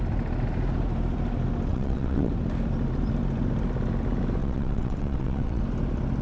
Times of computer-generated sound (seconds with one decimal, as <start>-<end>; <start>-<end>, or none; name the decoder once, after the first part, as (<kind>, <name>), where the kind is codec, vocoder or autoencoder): 1.7-2.3 (vocoder, WaveNeXt); 4.4-5.6